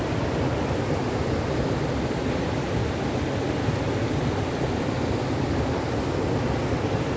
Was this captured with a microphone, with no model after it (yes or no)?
yes